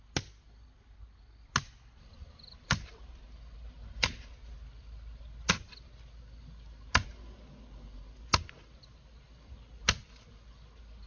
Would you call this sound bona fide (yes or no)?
yes